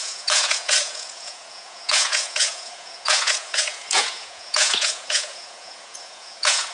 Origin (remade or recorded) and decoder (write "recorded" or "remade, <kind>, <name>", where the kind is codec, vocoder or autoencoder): remade, vocoder, Vocos